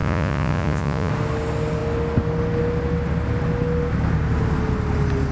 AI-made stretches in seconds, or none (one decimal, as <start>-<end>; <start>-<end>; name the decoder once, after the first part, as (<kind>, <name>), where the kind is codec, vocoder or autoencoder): 0.0-1.1 (vocoder, Vocos)